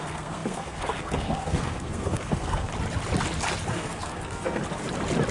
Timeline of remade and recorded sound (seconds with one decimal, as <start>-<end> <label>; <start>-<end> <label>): 0.0-2.7 remade; 2.7-3.7 recorded; 3.7-4.6 remade; 4.6-5.3 recorded